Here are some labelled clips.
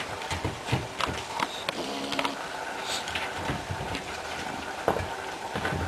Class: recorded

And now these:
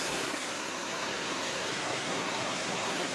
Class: remade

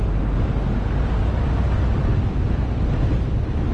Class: recorded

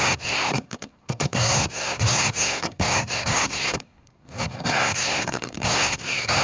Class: remade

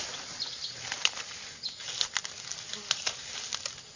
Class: recorded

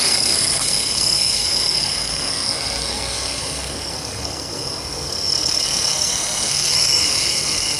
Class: remade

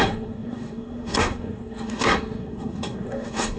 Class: remade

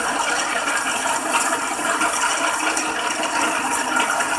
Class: recorded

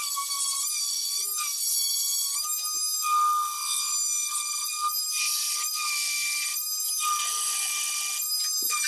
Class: recorded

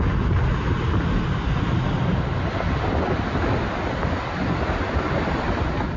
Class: recorded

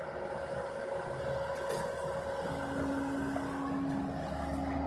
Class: recorded